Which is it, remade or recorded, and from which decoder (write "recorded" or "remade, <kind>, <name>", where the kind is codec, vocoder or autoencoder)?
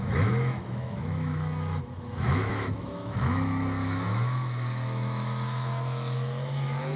remade, autoencoder, DAC-VAE